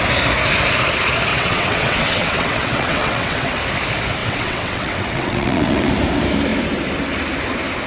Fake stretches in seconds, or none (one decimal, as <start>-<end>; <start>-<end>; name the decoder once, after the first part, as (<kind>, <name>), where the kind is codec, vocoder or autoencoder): 1.3-3.6 (vocoder, WaveNeXt); 4.2-5.9